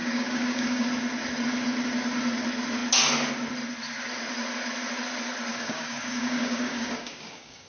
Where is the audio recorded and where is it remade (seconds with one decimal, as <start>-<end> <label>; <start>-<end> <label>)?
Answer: 0.0-0.9 remade; 0.9-5.5 recorded; 5.5-7.7 remade